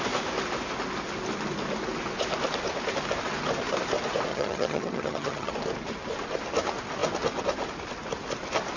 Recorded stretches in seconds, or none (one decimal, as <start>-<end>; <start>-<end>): 0.0-4.3; 5.5-8.8